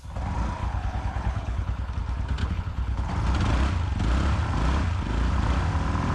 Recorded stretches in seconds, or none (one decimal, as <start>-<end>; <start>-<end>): 0.0-0.6; 1.9-2.4; 3.1-6.1